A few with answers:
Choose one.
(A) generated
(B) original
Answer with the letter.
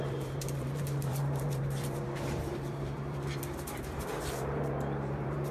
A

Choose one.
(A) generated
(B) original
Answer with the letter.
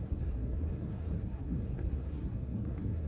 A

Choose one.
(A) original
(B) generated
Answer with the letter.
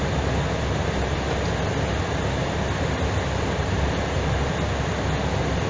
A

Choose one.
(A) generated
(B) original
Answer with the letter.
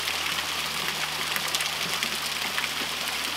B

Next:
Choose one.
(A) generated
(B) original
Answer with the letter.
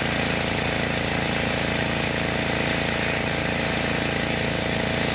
B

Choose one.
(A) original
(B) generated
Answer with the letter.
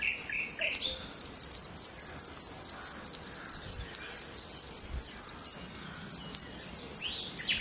A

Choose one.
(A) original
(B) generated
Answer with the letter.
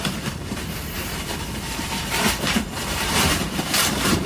B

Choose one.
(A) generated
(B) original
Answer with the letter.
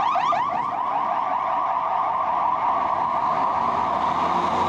B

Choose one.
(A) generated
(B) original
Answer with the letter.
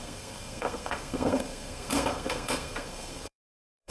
A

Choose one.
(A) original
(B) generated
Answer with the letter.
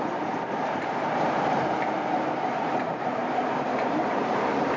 B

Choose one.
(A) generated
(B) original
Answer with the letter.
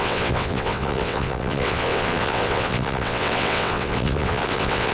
A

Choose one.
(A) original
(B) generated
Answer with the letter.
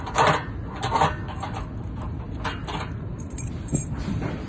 A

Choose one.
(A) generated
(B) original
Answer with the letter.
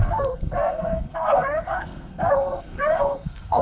A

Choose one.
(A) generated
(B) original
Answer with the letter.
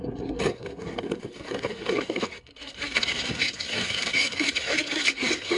A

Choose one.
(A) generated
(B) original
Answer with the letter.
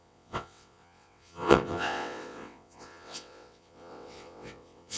A